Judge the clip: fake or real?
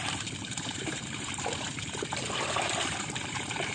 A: fake